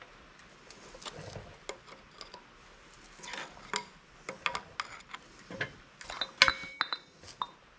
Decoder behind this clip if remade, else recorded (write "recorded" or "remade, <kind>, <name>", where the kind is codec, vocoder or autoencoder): recorded